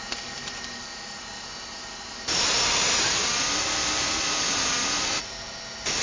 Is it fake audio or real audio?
real